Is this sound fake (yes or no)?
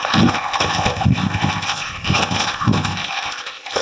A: yes